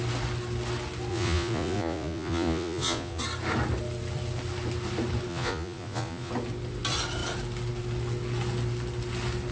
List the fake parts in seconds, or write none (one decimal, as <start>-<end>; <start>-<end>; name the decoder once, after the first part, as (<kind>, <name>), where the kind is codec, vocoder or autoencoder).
1.1-3.2 (vocoder, Vocos); 5.3-6.3